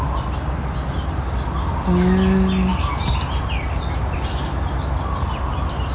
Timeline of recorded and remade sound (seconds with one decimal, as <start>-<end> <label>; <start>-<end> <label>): 0.0-5.9 recorded